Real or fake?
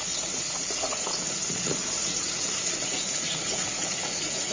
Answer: fake